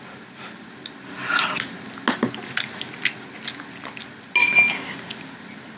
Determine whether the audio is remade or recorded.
recorded